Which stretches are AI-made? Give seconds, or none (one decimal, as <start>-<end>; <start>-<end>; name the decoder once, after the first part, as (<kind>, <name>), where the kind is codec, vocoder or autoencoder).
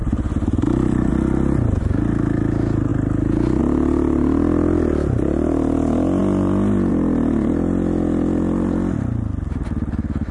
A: 0.0-1.1 (vocoder, BigVGAN v2)